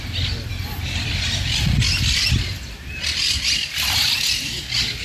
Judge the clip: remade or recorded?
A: recorded